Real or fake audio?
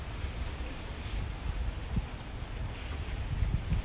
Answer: fake